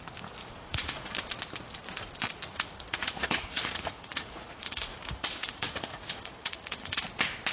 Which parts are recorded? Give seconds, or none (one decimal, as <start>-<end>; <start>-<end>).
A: 0.0-0.4; 1.1-2.5; 7.0-7.5